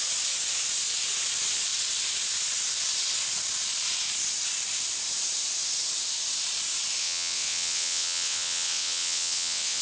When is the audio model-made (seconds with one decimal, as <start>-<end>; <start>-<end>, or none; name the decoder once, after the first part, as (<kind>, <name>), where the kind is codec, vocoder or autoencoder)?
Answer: 7.0-9.8 (vocoder, WaveNeXt)